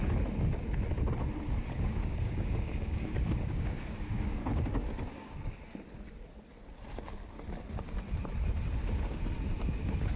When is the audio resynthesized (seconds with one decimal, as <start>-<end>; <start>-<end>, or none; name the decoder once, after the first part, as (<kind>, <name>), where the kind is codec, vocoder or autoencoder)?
1.6-5.6 (codec, DAC)